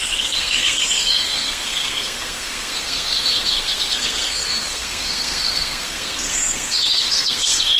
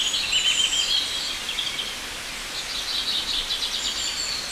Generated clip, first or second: first